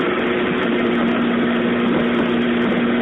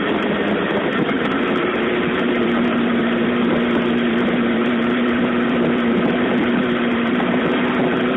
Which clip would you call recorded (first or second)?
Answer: first